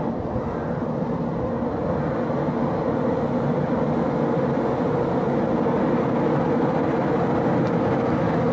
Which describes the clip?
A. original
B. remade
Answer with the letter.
A